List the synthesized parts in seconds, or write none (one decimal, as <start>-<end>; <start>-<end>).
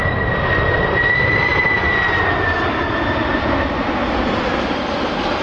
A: 0.0-1.5; 2.9-5.4